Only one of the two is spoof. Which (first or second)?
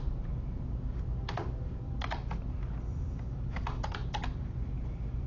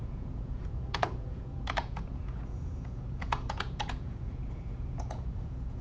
second